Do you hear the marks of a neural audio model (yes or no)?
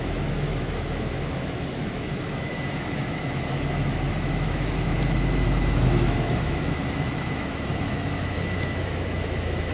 yes